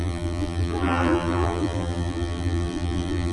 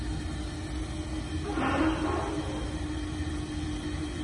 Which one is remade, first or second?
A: first